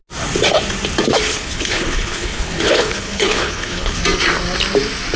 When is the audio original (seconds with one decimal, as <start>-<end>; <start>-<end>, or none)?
0.0-1.3; 4.0-5.2